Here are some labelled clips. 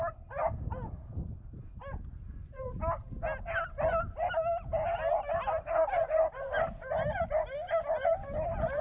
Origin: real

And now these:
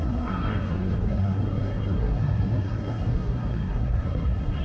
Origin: fake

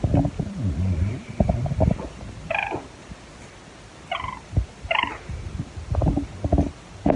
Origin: real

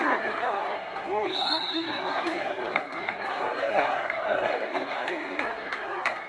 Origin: fake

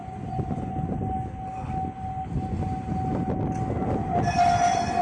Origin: real